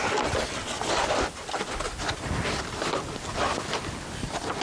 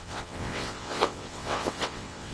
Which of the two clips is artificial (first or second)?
second